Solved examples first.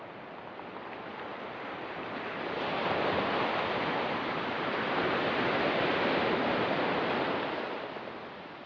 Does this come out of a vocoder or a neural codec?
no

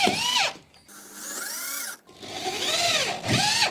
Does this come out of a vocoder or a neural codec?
no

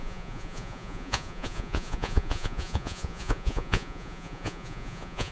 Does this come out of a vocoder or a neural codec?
yes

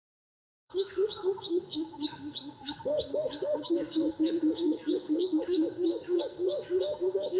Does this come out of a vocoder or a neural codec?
yes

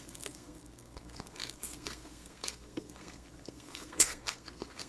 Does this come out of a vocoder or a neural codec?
yes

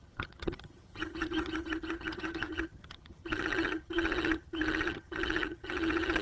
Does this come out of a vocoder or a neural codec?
yes